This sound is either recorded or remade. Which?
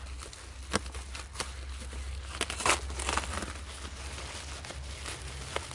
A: recorded